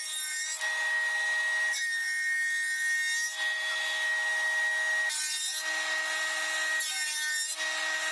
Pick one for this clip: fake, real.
real